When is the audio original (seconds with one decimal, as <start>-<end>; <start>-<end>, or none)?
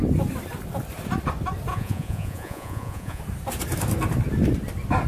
0.0-1.7; 3.2-5.1